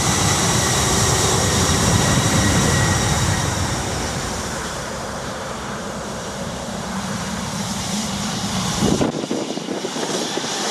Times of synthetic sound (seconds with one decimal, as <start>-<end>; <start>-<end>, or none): 0.0-8.0; 8.7-10.7